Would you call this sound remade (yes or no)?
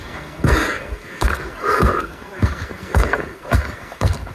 yes